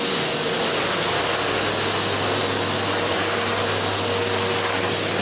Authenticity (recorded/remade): recorded